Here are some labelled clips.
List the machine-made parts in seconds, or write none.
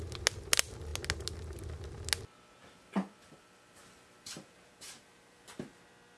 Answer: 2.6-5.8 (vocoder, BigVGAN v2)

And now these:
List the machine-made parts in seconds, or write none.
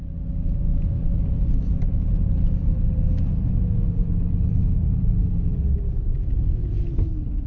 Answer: 6.1-6.6 (vocoder, BigVGAN v2)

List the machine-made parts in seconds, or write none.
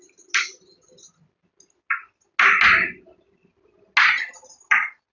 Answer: none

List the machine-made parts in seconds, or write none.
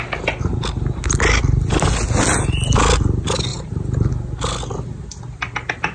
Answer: 3.5-4.1 (vocoder, BigVGAN v2)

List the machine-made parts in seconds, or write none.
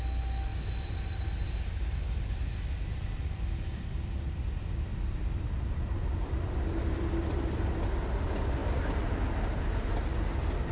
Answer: 0.5-1.2 (vocoder, BigVGAN v2)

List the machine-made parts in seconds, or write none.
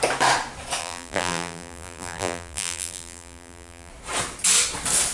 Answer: 0.8-3.9 (vocoder, BigVGAN v2)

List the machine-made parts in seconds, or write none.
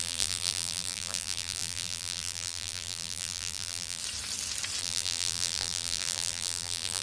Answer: 0.0-4.0 (vocoder, BigVGAN v2); 4.8-7.0